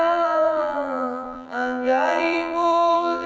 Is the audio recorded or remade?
remade